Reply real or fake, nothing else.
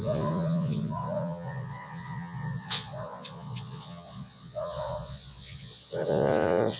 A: fake